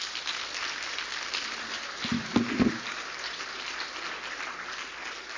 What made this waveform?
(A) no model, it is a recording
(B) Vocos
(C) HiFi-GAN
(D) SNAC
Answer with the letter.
A